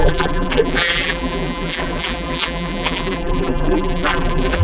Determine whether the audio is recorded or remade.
remade